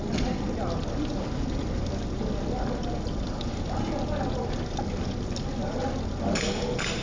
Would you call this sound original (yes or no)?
yes